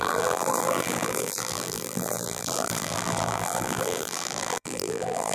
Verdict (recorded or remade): remade